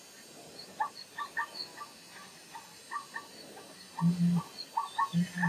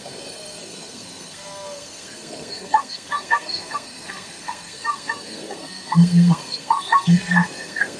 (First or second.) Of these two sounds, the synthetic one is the second